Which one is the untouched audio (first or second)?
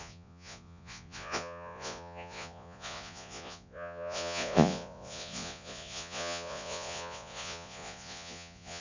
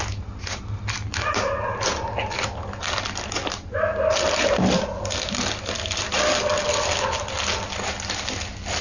second